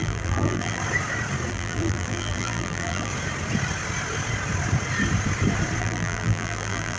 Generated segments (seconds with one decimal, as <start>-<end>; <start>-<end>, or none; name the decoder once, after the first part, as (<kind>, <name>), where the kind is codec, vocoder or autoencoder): 0.0-0.8 (vocoder, BigVGAN v2); 1.5-3.1; 5.8-7.0